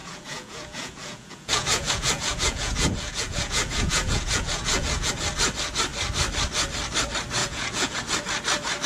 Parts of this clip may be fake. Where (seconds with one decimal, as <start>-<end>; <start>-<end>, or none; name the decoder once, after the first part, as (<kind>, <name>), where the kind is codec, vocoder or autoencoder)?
0.0-5.1 (vocoder, Vocos); 7.4-8.0